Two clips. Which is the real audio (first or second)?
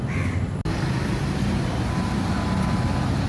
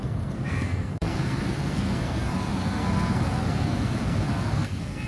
first